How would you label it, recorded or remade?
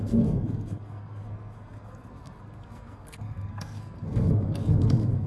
remade